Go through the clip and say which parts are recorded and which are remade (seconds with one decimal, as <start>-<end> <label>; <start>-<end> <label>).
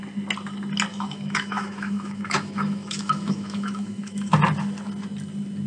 0.0-0.9 recorded; 0.9-4.3 remade; 4.3-5.7 recorded